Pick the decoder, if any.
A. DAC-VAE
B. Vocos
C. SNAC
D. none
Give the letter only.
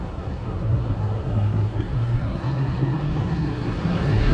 C